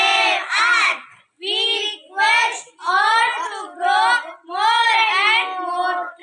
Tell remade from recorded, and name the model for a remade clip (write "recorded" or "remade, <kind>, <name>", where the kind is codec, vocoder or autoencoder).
recorded